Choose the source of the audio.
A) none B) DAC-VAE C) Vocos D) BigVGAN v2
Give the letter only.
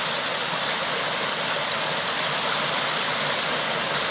A